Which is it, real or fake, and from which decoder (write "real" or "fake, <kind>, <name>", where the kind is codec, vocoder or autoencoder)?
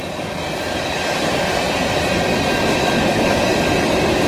real